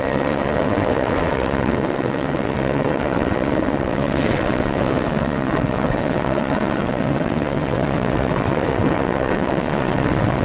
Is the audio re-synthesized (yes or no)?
yes